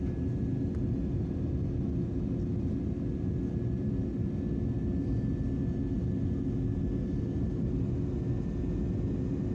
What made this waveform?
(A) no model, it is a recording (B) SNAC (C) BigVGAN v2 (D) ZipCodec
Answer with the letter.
A